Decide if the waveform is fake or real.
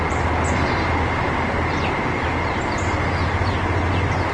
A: real